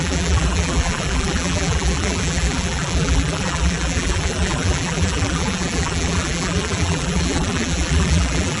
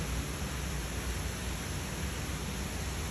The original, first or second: second